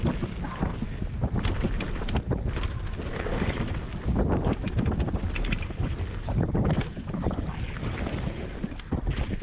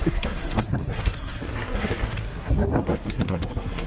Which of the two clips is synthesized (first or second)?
second